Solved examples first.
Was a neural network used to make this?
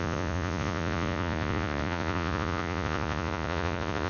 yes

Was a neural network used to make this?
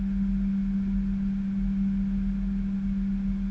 no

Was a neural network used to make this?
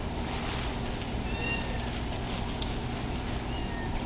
no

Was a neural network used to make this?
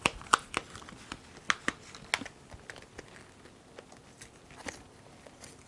no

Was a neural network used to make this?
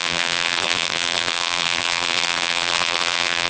yes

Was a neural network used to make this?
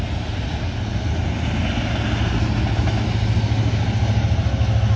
no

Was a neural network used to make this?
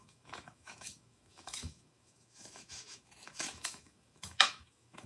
yes